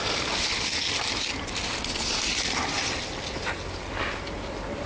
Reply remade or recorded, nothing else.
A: recorded